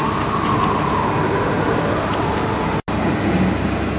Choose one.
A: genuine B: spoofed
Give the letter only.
A